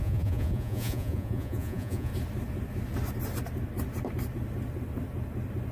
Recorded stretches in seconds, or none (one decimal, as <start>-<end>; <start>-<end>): 2.1-5.7